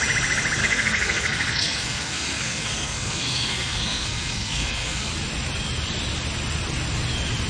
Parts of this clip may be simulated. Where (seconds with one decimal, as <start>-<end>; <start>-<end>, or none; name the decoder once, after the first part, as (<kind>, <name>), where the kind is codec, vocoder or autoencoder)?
0.6-5.1 (codec, SNAC)